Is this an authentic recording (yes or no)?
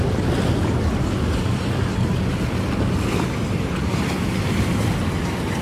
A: yes